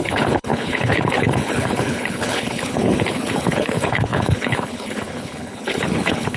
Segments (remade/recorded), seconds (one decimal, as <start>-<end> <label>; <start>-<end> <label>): 0.0-6.4 remade